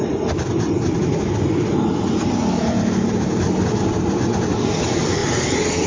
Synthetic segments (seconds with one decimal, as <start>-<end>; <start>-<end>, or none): 0.0-5.2